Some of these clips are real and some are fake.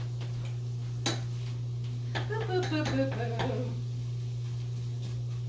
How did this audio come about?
real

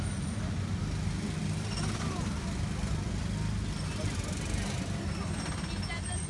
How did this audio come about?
real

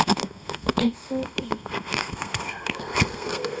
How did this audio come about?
fake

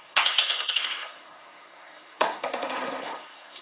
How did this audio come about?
fake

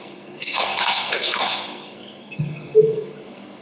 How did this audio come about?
fake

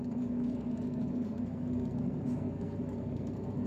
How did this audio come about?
fake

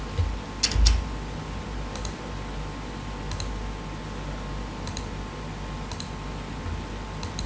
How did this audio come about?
real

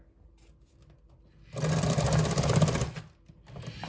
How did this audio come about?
real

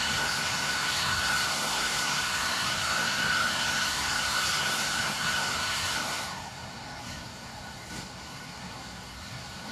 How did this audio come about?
fake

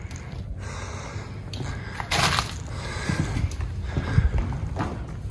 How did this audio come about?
real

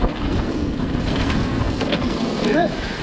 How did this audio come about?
fake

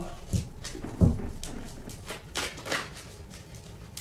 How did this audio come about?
real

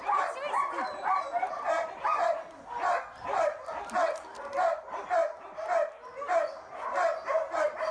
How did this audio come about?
real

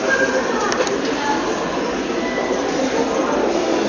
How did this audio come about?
real